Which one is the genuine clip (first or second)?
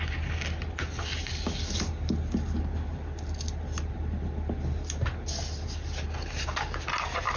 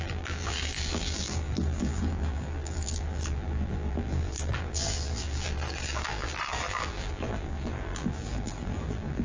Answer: first